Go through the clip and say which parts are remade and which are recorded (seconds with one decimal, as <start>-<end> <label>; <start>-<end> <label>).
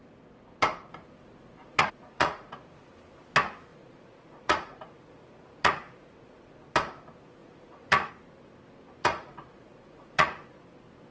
0.0-1.6 recorded; 1.6-2.9 remade; 2.9-3.7 recorded; 3.7-6.5 remade; 6.5-7.4 recorded; 7.4-8.1 remade; 8.1-9.0 recorded; 9.0-10.6 remade; 10.6-11.1 recorded